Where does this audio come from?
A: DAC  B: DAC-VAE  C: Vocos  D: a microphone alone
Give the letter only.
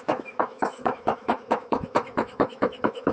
B